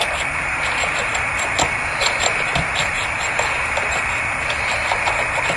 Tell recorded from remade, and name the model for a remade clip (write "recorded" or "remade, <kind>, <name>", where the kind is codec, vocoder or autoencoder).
recorded